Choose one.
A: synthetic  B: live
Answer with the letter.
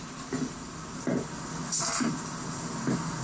B